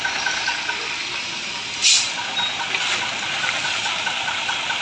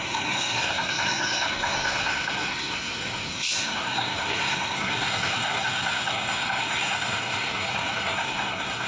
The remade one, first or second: second